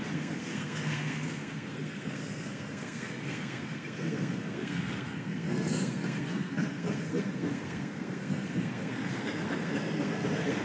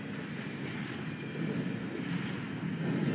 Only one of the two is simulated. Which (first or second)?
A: first